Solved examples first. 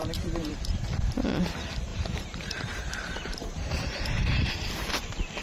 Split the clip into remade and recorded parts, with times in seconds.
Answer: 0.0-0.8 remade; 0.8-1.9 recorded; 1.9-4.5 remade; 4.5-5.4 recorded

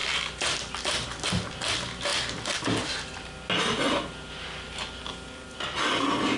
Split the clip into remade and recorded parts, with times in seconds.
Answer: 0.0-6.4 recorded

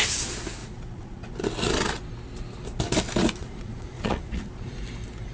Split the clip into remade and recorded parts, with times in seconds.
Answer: 0.0-0.6 recorded; 0.6-1.2 remade; 1.2-3.4 recorded; 3.4-4.7 remade; 4.7-5.3 recorded

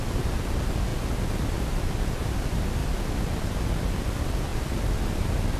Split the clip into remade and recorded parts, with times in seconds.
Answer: 0.0-5.6 recorded

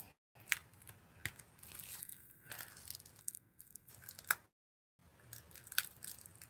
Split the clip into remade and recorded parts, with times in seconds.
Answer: 0.0-2.0 recorded; 2.0-2.5 remade; 2.5-3.2 recorded; 3.2-3.9 remade; 3.9-6.5 recorded

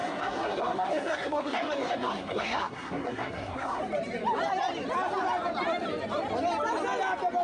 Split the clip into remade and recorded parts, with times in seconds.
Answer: 0.0-3.8 remade; 3.8-7.4 recorded

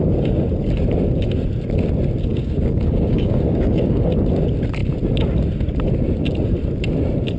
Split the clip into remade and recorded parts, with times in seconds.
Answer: 0.0-2.3 recorded; 2.3-4.1 remade; 4.1-7.4 recorded